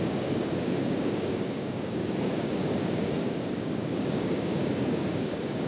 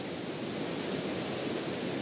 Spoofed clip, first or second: first